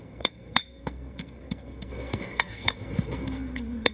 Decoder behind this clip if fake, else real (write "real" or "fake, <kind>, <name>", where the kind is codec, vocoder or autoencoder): fake, codec, SNAC